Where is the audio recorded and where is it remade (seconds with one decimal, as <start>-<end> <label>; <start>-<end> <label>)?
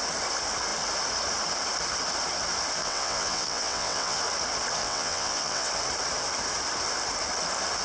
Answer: 0.0-2.8 recorded; 2.8-4.2 remade; 4.2-4.8 recorded; 4.8-5.7 remade; 5.7-7.8 recorded